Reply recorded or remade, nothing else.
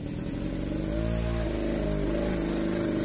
recorded